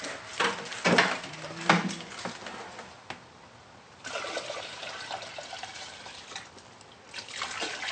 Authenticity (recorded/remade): recorded